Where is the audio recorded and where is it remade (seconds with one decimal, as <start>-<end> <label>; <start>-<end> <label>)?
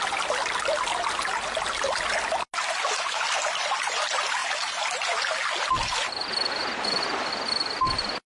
0.0-8.3 recorded